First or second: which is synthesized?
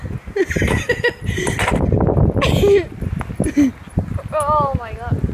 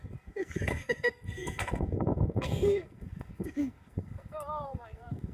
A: second